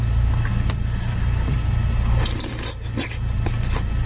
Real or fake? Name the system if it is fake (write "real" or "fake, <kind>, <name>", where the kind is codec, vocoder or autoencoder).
real